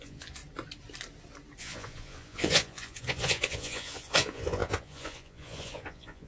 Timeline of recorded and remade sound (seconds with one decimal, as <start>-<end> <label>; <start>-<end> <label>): 0.0-0.4 remade; 0.4-1.6 recorded; 1.6-6.3 remade